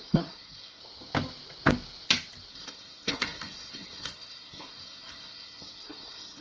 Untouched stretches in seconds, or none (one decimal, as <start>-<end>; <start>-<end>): 0.8-2.5